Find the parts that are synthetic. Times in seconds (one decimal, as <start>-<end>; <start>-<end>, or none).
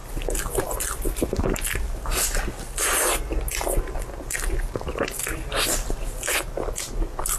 none